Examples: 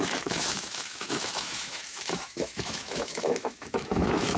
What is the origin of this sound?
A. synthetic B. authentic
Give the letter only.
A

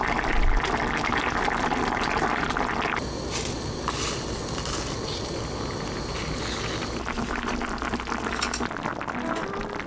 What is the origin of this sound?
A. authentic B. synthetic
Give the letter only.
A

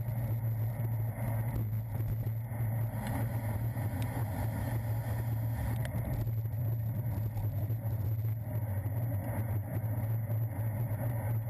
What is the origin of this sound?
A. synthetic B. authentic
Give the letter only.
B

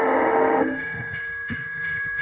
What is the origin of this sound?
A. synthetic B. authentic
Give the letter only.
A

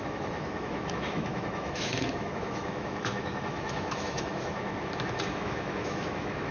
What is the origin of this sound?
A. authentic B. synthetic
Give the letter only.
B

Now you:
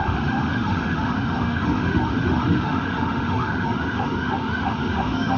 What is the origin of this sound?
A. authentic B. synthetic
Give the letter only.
B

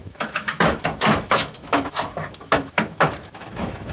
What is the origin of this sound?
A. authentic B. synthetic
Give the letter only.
B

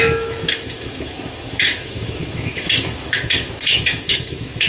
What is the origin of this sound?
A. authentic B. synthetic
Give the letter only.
B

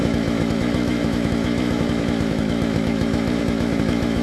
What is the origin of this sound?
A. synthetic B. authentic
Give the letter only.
A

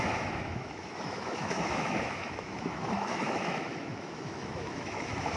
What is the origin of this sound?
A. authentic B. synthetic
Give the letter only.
B